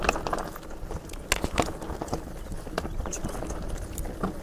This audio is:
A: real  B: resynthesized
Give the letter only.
A